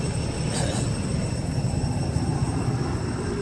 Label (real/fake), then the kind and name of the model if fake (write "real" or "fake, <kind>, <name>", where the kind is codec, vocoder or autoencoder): real